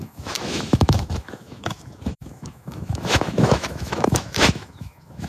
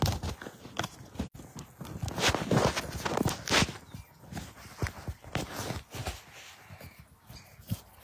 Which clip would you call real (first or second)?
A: second